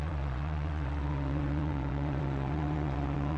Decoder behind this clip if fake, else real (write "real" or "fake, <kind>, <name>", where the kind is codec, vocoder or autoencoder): fake, vocoder, WaveNeXt